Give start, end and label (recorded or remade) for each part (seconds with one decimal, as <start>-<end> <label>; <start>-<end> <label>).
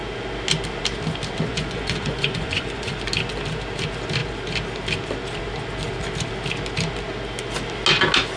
0.0-1.5 recorded; 1.5-3.0 remade; 3.0-8.4 recorded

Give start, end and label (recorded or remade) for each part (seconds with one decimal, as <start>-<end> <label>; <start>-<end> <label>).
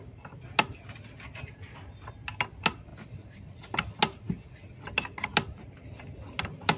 0.0-6.8 recorded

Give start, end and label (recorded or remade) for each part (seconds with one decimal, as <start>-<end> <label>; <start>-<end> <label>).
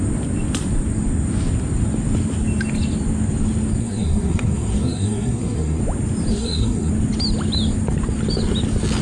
0.0-3.8 recorded; 3.8-5.8 remade; 5.8-6.3 recorded; 6.3-6.9 remade; 6.9-9.0 recorded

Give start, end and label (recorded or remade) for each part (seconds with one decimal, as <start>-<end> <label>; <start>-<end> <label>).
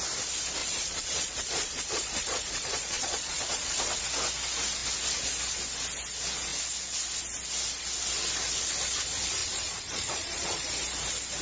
0.0-0.6 recorded; 0.6-4.0 remade; 4.0-9.4 recorded; 9.4-10.7 remade; 10.7-11.4 recorded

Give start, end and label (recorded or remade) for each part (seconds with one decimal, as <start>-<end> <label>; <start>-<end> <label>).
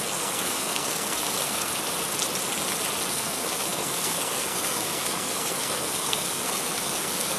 0.0-1.7 remade; 1.7-3.1 recorded; 3.1-7.4 remade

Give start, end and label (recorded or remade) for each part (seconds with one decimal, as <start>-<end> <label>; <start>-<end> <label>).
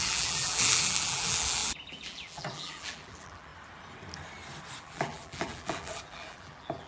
0.0-3.5 remade; 3.5-4.8 recorded; 4.8-6.9 remade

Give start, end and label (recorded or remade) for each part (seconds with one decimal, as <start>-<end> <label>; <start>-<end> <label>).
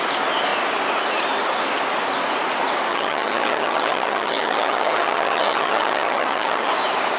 0.0-2.9 recorded; 2.9-6.7 remade; 6.7-7.2 recorded